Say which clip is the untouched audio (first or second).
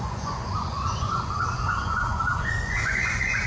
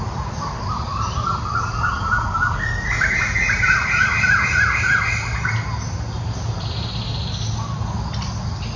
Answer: second